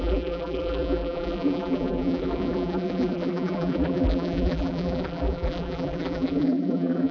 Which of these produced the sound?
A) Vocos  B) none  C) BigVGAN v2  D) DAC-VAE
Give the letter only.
C